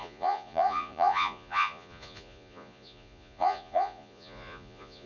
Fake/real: fake